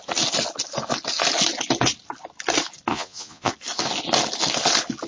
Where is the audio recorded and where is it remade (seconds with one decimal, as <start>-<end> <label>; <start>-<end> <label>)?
0.0-2.9 recorded; 2.9-3.5 remade; 3.5-5.1 recorded